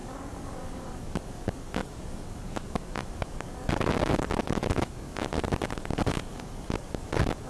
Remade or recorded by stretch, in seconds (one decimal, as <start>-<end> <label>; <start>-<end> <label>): 0.0-7.5 remade